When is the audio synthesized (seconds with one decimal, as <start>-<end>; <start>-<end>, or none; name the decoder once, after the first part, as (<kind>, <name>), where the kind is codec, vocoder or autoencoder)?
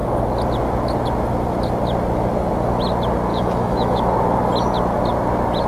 3.3-4.0 (autoencoder, DAC-VAE)